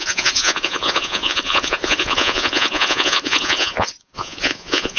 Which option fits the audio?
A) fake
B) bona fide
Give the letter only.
A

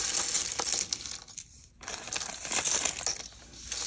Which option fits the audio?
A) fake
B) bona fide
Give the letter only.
B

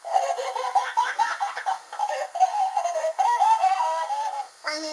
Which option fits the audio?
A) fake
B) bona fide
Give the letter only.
A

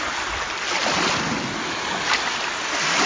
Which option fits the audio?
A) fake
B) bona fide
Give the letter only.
B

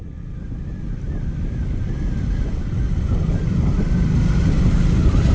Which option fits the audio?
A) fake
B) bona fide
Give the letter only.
A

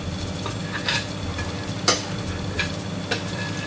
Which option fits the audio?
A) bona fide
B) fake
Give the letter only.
A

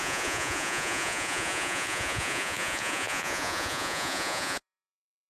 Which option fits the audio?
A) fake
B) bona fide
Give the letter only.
A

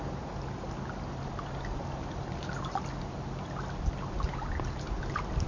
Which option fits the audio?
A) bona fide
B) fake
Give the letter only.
A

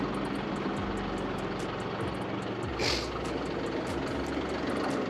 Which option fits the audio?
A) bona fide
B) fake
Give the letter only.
A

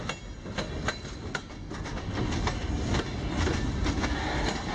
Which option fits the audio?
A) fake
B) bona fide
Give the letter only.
B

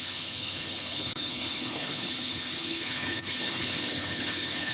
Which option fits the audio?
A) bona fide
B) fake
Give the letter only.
B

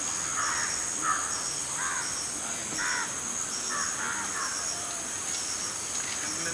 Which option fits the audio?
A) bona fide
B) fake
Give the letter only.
A